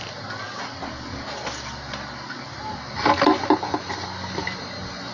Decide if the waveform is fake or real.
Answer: real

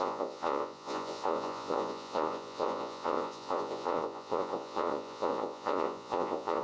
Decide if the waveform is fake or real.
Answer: fake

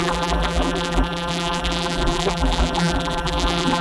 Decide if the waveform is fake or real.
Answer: fake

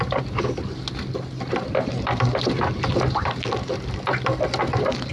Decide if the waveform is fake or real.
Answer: real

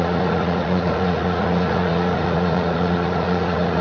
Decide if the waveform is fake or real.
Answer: fake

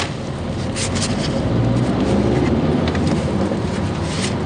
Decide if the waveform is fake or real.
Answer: real